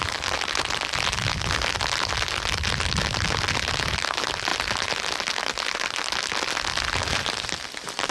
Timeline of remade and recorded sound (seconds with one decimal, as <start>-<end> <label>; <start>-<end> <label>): 0.0-8.1 recorded